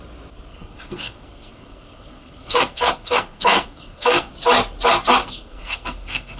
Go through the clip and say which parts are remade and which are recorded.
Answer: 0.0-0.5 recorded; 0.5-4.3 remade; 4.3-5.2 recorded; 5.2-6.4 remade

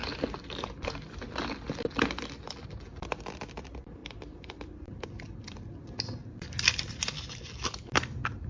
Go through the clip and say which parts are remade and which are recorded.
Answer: 0.0-1.3 remade; 1.3-4.0 recorded; 4.0-5.1 remade; 5.1-6.2 recorded; 6.2-6.9 remade; 6.9-8.5 recorded

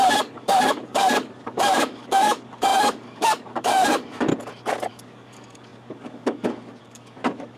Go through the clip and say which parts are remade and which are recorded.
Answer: 0.0-4.3 remade; 4.3-4.9 recorded; 4.9-7.6 remade

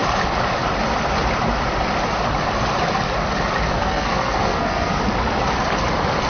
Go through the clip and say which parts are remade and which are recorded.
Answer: 0.0-3.8 recorded; 3.8-5.0 remade; 5.0-6.3 recorded

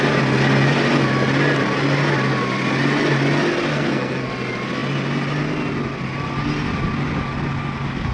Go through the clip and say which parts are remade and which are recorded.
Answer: 0.0-3.7 recorded; 3.7-4.3 remade; 4.3-8.1 recorded

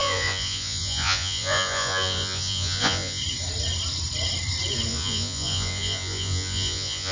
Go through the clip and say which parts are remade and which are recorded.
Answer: 0.0-3.2 remade; 3.2-4.9 recorded; 4.9-7.1 remade

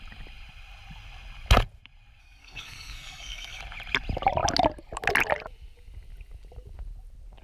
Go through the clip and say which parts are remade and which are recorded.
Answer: 0.0-2.2 recorded; 2.2-3.6 remade; 3.6-7.4 recorded